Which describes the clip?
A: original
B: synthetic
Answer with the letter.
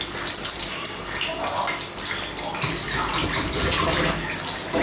A